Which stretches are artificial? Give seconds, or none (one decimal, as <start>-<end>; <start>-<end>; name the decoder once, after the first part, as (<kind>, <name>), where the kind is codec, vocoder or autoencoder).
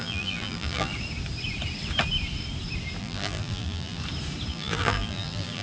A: 0.0-0.9 (vocoder, BigVGAN v2); 3.0-4.0; 4.5-5.6